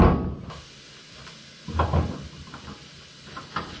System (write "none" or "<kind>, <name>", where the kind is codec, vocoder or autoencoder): none